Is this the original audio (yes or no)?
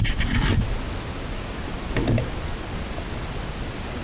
yes